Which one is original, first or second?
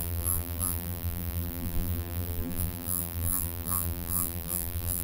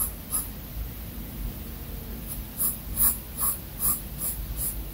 second